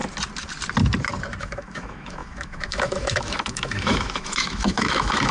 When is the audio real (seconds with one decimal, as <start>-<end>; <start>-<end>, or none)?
0.0-1.4